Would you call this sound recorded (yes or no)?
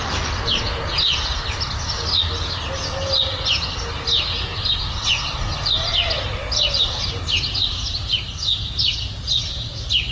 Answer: yes